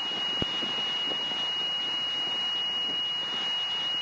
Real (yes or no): yes